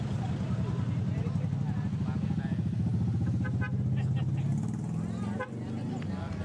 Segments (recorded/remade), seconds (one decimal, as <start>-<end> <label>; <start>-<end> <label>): 0.0-2.9 remade; 2.9-4.2 recorded; 4.2-6.4 remade